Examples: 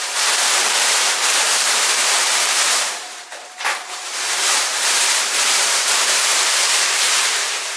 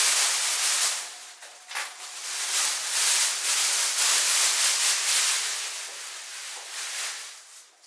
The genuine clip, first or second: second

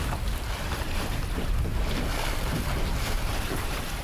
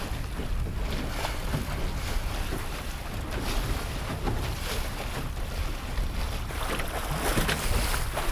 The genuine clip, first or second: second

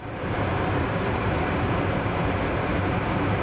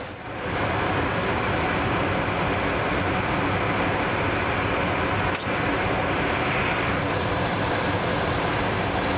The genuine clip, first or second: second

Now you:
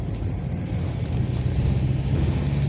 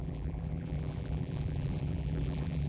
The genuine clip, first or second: first